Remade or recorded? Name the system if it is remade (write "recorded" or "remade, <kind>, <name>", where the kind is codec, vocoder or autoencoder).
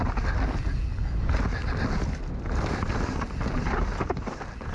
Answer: recorded